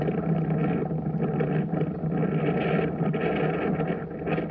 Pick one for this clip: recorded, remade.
recorded